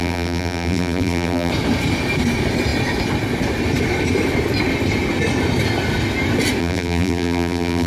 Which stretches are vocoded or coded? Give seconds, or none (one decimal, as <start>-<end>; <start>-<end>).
0.0-1.5; 6.6-7.9